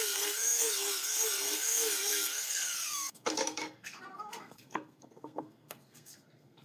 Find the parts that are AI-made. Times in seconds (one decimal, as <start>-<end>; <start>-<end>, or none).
0.0-6.6